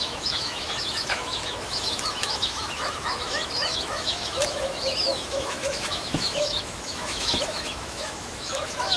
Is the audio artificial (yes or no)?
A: yes